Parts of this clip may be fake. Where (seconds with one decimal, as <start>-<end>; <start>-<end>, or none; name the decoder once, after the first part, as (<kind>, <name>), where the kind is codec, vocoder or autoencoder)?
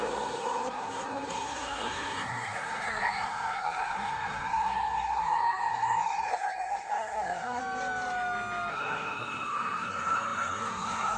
0.0-7.6 (codec, SNAC); 8.7-11.2